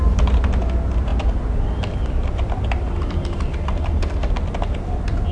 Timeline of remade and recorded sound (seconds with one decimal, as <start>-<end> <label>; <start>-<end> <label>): 0.0-5.3 recorded